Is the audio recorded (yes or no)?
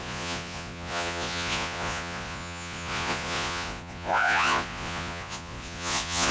no